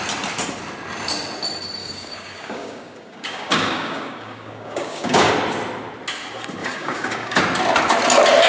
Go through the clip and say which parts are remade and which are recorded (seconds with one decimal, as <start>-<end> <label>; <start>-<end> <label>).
0.0-1.8 recorded; 1.8-5.3 remade; 5.3-6.6 recorded; 6.6-7.4 remade; 7.4-8.5 recorded